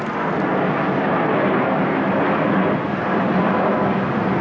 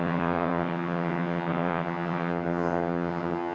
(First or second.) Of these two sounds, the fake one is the second